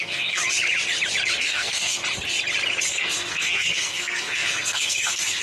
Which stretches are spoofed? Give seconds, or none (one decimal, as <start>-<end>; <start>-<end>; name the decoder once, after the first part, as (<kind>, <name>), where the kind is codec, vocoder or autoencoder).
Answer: 0.0-0.4 (codec, SNAC); 1.4-2.0; 2.9-5.4